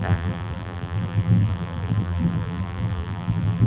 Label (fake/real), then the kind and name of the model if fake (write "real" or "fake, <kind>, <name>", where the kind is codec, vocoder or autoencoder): fake, vocoder, BigVGAN v2